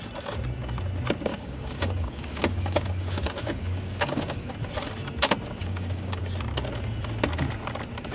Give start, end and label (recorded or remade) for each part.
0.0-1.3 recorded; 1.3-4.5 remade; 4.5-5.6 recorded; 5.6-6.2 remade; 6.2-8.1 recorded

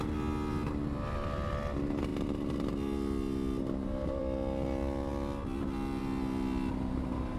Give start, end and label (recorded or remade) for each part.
0.0-7.4 recorded

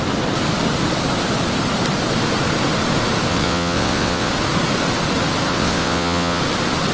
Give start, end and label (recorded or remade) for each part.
0.0-3.3 recorded; 3.3-4.3 remade; 4.3-5.5 recorded; 5.5-6.4 remade; 6.4-6.9 recorded